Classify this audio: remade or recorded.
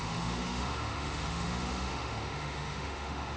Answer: remade